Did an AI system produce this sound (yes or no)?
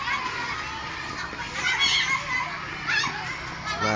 no